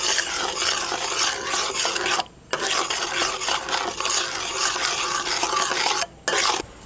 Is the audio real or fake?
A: real